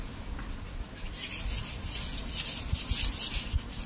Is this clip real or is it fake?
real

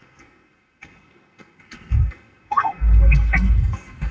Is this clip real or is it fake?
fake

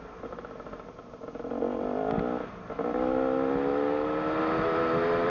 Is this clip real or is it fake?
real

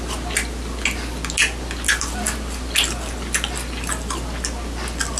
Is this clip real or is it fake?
real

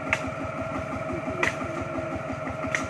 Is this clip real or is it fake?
real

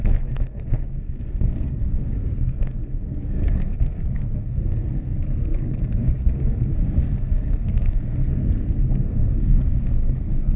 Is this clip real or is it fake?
fake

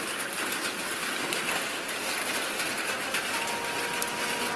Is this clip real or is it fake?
real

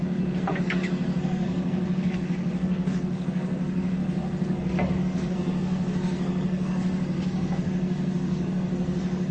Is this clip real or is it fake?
fake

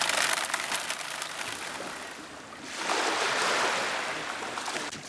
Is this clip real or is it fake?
real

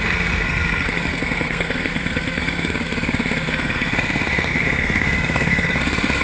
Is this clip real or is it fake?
fake